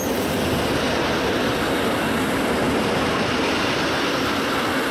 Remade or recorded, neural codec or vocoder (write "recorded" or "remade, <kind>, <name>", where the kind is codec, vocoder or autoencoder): recorded